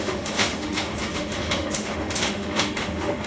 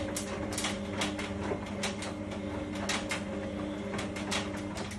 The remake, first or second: first